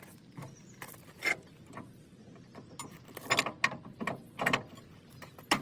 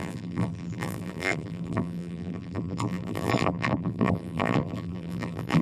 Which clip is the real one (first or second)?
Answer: first